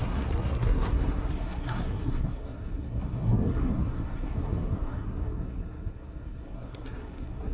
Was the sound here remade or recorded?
remade